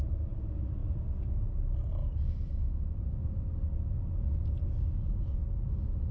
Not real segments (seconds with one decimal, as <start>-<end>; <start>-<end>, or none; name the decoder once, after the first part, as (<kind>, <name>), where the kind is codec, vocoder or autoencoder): none